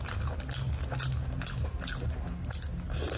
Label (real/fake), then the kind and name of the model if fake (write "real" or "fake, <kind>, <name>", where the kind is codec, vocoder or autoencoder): real